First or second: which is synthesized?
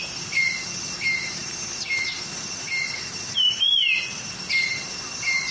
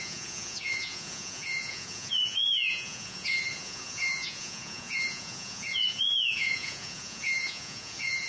second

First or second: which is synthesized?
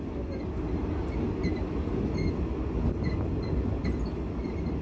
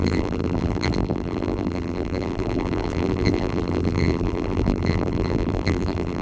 second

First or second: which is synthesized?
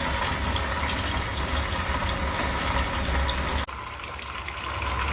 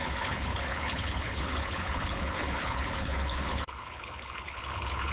second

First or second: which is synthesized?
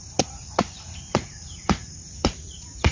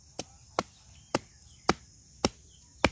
first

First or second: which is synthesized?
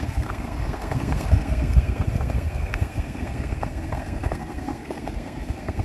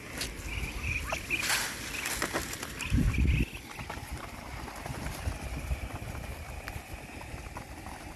first